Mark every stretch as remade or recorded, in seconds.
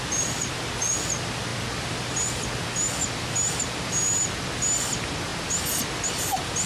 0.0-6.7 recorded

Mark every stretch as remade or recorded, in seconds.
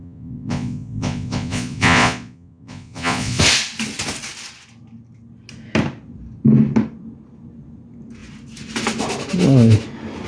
0.0-3.4 remade; 3.4-10.3 recorded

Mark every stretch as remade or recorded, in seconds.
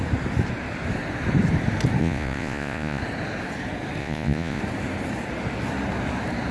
0.0-2.0 recorded; 2.0-3.0 remade; 3.0-4.0 recorded; 4.0-4.6 remade; 4.6-6.5 recorded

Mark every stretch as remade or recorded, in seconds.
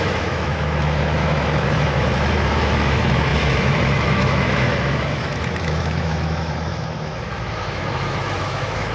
0.0-8.9 remade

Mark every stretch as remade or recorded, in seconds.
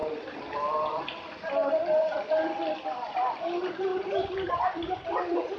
0.0-3.4 recorded; 3.4-5.6 remade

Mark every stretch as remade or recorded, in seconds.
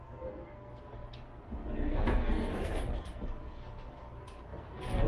0.0-5.1 remade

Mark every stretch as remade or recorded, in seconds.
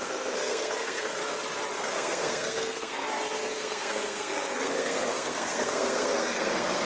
0.0-1.2 remade; 1.2-1.8 recorded; 1.8-3.0 remade; 3.0-3.6 recorded; 3.6-6.8 remade